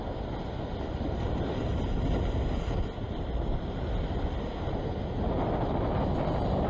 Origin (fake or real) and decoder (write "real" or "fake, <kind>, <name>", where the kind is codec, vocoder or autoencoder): real